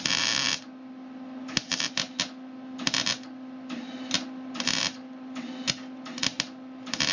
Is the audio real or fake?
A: real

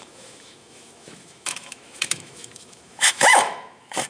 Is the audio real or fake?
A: fake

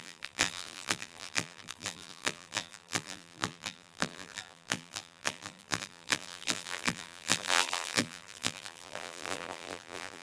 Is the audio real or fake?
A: fake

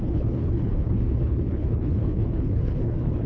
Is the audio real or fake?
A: fake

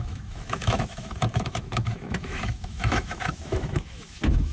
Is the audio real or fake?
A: fake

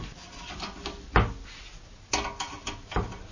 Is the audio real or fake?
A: real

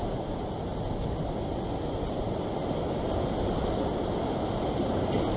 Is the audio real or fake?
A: real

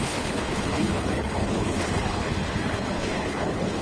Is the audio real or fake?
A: fake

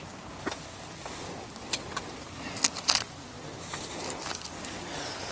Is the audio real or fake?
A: real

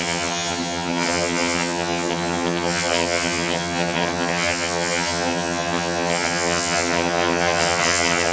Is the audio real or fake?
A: fake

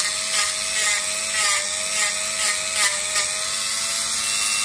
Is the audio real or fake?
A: real